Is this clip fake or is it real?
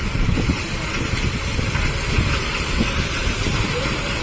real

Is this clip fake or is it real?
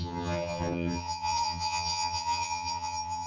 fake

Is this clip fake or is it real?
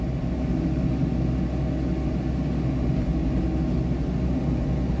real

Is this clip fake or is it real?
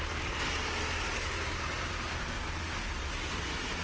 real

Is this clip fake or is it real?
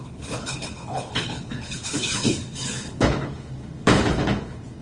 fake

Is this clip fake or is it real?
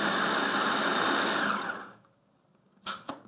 real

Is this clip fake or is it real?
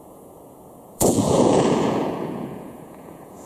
fake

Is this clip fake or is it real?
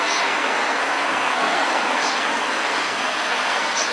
fake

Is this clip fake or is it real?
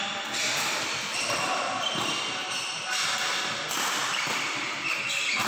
real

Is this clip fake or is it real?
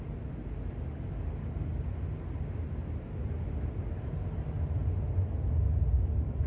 real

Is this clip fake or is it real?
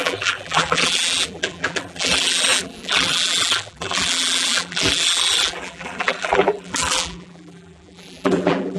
fake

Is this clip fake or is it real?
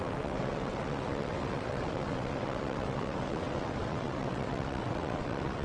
fake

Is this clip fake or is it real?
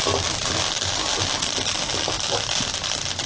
real